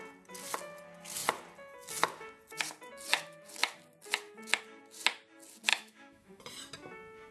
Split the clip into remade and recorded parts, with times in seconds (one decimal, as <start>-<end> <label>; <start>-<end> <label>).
0.0-5.7 recorded; 5.7-6.4 remade; 6.4-7.3 recorded